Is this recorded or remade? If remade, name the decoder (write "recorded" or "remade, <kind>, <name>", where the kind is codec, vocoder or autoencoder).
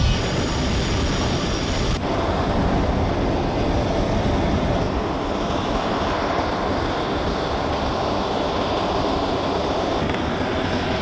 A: recorded